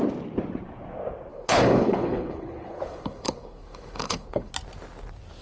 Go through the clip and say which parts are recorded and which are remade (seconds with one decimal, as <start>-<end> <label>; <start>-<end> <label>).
0.0-1.3 recorded; 1.3-4.5 remade; 4.5-5.4 recorded

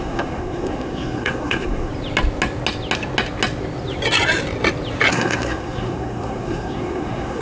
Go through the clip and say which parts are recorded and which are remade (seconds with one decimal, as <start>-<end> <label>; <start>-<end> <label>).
0.0-1.9 remade; 1.9-5.1 recorded; 5.1-7.4 remade

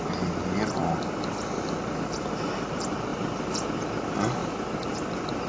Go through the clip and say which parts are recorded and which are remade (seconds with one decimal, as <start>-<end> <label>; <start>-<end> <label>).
0.0-5.5 recorded

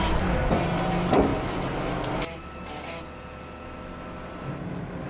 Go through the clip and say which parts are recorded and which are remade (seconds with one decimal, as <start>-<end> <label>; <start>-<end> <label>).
0.0-5.1 recorded

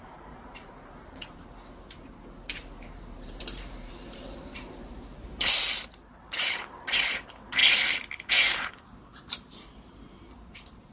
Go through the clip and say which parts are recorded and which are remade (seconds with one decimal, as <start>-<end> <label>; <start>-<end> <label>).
0.0-7.6 remade; 7.6-8.3 recorded; 8.3-10.9 remade

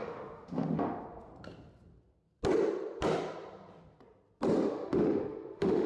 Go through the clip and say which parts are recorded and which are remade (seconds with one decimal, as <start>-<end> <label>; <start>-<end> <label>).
0.0-1.3 remade; 1.3-4.7 recorded; 4.7-5.9 remade

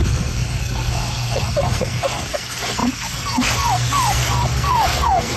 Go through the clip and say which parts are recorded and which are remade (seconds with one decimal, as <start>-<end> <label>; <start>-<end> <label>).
0.0-5.4 remade